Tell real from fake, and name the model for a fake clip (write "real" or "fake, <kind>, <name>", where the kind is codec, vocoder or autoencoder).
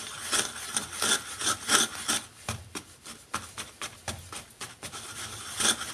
real